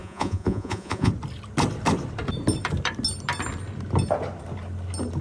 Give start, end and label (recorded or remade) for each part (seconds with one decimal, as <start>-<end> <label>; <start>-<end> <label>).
0.0-1.1 remade; 1.1-5.2 recorded